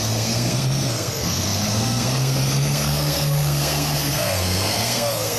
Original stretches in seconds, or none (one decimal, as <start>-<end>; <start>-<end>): none